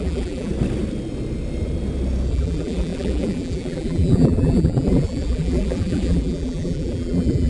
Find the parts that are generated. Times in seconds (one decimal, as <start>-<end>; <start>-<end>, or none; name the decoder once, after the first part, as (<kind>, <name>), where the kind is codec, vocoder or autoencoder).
0.0-0.5 (vocoder, BigVGAN v2); 2.3-7.5

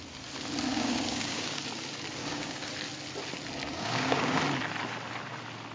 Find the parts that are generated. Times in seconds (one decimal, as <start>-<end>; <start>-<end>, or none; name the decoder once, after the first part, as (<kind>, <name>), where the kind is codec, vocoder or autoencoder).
0.7-1.6 (codec, DAC); 2.2-2.7; 3.6-4.4

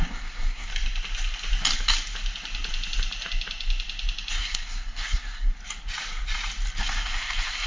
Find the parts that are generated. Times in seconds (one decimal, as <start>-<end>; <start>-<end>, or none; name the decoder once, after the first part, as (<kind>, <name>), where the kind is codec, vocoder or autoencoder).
0.0-0.7 (codec, SNAC); 4.3-5.6; 6.8-7.7

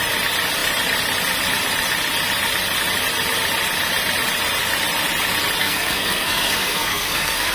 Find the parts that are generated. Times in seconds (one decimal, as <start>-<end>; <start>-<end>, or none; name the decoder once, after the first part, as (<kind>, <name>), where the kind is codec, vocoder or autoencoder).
5.6-7.5 (codec, SNAC)

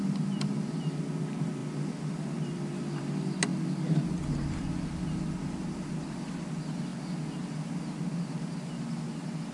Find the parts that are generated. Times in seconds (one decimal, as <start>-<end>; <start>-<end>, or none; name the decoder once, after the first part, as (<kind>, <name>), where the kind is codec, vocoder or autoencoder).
none

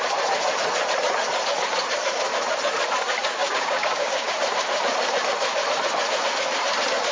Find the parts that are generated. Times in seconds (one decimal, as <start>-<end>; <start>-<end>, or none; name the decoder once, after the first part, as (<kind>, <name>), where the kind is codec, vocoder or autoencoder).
3.4-4.3 (codec, DAC)